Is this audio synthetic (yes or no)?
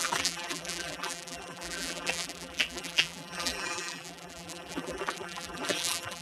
yes